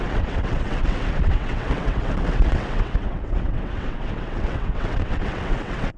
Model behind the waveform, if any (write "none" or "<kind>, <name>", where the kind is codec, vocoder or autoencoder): vocoder, WaveNeXt